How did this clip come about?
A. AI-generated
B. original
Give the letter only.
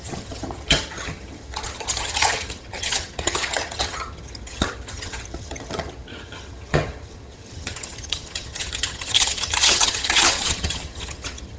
A